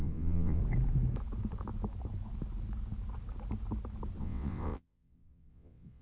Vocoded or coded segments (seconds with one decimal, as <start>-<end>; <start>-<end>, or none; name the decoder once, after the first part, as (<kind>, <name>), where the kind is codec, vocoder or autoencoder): 0.0-0.6 (vocoder, WaveNeXt); 4.2-6.0